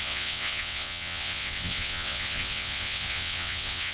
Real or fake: fake